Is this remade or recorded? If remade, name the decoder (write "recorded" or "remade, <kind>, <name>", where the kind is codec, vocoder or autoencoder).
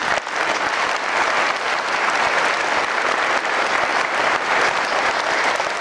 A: recorded